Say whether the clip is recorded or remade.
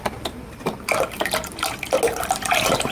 remade